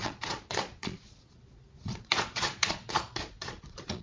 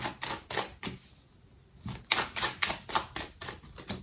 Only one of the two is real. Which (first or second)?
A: second